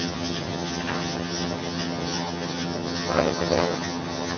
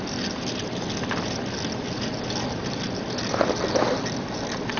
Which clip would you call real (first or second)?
second